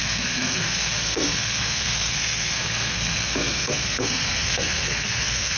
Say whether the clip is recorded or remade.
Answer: remade